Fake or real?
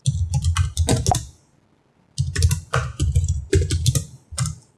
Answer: real